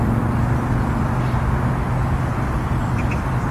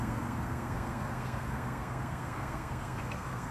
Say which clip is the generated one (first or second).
second